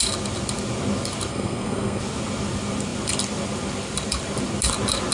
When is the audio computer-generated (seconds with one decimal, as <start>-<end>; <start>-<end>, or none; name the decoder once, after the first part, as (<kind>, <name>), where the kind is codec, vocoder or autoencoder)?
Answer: 1.3-2.0 (codec, SNAC)